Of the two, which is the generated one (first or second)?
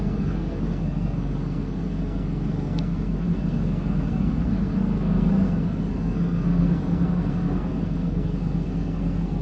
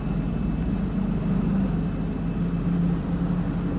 first